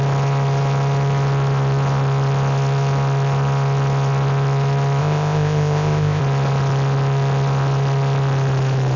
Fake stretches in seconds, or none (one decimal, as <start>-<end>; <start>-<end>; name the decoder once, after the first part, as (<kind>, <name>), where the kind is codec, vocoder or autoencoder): 5.0-6.2 (codec, ZipCodec)